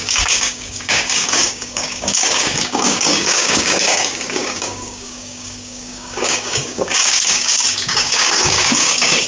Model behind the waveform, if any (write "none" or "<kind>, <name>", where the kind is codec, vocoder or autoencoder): codec, DAC